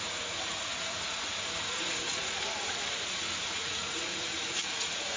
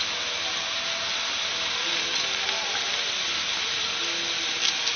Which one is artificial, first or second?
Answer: first